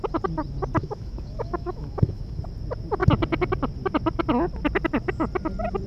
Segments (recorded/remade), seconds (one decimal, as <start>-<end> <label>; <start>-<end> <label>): 0.0-0.8 recorded; 0.8-2.4 remade; 2.4-5.9 recorded